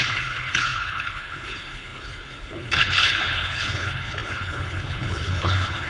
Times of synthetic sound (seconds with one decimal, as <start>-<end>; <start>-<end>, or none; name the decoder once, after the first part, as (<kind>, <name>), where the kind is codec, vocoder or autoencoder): 0.0-5.9 (codec, HILCodec)